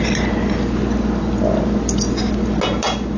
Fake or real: real